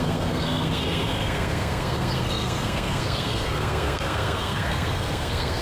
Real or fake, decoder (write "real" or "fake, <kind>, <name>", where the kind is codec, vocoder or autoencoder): fake, codec, SNAC